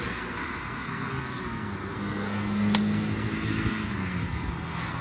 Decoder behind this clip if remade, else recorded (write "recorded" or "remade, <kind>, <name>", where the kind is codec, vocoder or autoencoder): remade, codec, SNAC